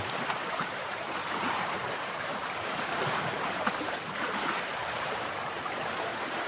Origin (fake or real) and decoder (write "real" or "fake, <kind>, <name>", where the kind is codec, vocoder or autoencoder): fake, vocoder, BigVGAN v2